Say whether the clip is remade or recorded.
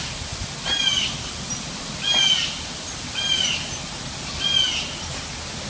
recorded